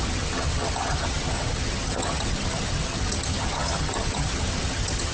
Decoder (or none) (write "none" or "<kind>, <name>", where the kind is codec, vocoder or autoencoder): vocoder, HiFi-GAN